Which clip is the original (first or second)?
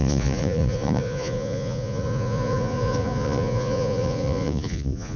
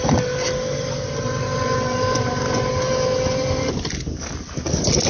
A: second